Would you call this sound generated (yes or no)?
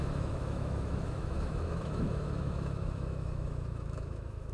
yes